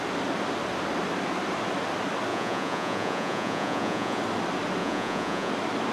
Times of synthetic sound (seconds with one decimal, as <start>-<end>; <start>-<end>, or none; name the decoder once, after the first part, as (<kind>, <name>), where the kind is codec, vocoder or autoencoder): 2.3-4.2 (vocoder, Vocos); 4.8-5.5